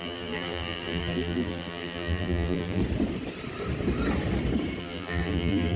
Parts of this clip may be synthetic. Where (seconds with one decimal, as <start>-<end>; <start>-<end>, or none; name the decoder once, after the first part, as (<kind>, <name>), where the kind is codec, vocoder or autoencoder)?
0.0-2.8 (vocoder, BigVGAN v2); 4.8-5.8